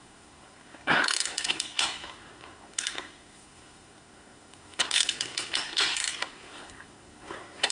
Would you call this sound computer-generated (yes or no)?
yes